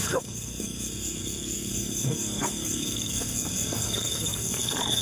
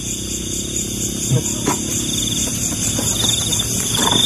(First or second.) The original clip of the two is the second